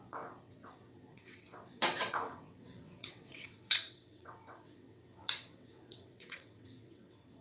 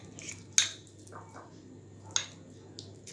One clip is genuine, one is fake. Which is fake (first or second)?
first